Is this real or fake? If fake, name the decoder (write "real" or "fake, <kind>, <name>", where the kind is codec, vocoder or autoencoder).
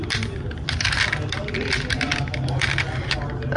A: real